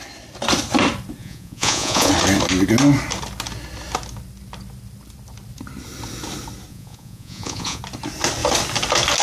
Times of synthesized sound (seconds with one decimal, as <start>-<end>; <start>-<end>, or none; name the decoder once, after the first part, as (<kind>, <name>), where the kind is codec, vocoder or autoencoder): 1.2-2.1 (vocoder, Vocos); 6.7-7.8